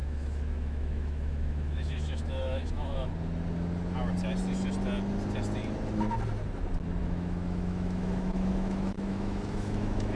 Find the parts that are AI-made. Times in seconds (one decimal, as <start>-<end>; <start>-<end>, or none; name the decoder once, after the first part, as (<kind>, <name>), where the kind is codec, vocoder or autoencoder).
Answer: 0.0-3.1 (autoencoder, DAC-VAE); 7.0-10.2